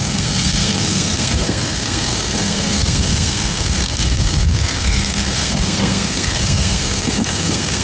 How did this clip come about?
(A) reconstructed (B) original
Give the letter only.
A